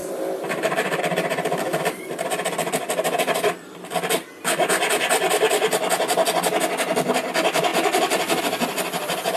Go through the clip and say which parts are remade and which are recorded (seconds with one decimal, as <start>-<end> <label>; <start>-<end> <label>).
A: 0.0-1.0 remade; 1.0-1.7 recorded; 1.7-4.9 remade; 4.9-7.7 recorded; 7.7-8.4 remade; 8.4-9.4 recorded